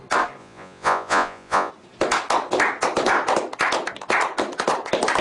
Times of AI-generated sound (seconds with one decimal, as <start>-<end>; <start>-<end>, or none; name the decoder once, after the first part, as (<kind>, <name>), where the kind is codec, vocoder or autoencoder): 0.4-1.7 (vocoder, Vocos)